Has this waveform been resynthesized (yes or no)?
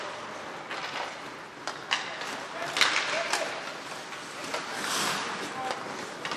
no